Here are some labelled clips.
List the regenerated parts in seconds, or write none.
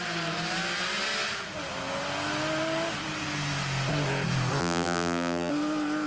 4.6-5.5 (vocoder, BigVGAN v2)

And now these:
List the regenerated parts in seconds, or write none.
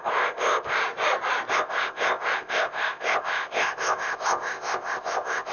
0.0-0.8 (codec, ZipCodec); 1.5-5.5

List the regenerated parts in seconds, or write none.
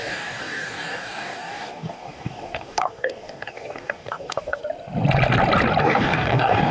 0.0-4.6 (codec, DAC); 5.8-6.7